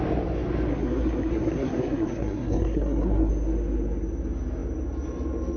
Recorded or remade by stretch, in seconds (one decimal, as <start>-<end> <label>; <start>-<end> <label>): 0.0-0.7 recorded; 0.7-3.3 remade; 3.3-5.6 recorded